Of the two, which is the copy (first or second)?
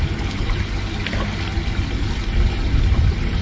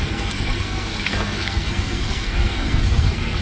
second